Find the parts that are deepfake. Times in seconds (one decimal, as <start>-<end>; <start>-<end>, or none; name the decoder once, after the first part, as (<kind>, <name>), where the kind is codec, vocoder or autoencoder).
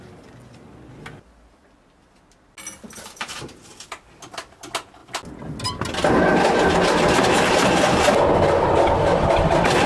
none